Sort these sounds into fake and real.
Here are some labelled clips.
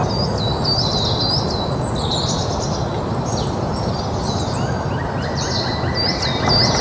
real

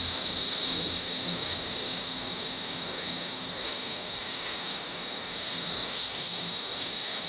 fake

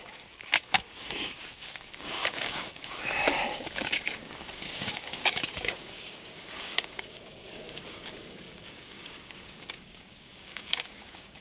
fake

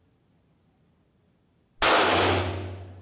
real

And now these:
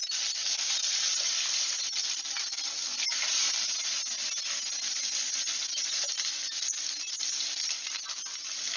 real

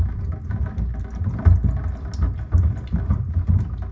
real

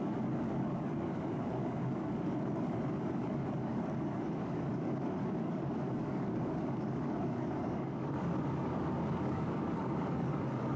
fake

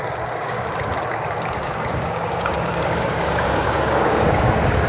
fake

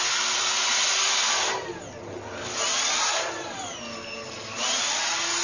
real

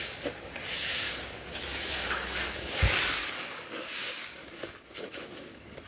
fake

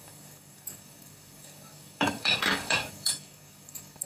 fake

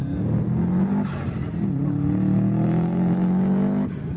real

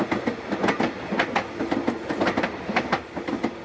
real